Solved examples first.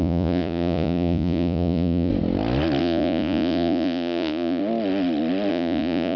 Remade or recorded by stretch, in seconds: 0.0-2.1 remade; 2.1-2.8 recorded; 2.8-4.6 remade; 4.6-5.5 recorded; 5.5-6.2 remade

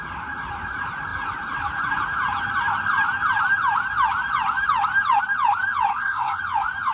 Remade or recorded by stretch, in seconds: 0.0-5.9 recorded; 5.9-6.4 remade; 6.4-6.9 recorded

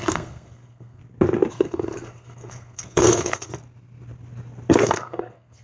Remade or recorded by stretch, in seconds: 0.0-1.0 remade; 1.0-1.5 recorded; 1.5-3.5 remade; 3.5-4.7 recorded; 4.7-5.6 remade